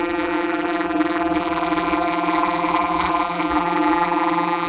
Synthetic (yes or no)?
yes